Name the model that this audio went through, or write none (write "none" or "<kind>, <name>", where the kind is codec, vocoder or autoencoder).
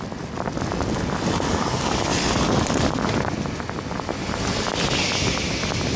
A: none